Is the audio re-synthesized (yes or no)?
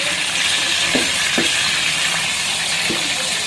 no